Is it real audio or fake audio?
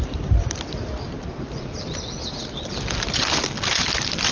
real